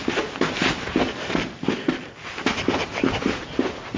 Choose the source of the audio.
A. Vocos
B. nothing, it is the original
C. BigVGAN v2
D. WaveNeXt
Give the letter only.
B